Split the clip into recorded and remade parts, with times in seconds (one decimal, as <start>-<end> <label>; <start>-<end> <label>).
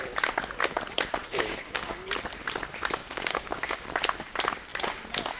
0.0-1.2 recorded; 1.2-2.1 remade; 2.1-3.0 recorded; 3.0-4.0 remade; 4.0-5.4 recorded